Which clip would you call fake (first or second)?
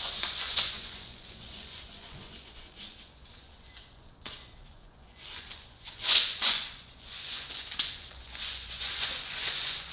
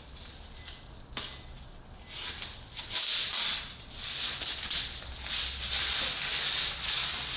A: first